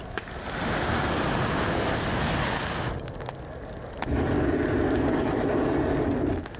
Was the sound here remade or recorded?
recorded